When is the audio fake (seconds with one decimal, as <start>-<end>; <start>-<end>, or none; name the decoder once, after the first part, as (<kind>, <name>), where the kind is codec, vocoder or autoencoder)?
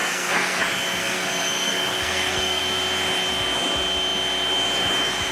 0.0-0.6 (codec, SNAC); 1.0-2.6